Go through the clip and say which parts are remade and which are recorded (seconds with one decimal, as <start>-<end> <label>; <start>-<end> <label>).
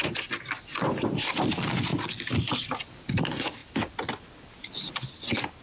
0.0-5.6 recorded